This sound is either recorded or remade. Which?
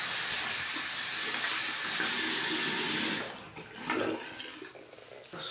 recorded